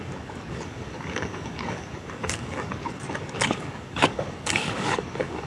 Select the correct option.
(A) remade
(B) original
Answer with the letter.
A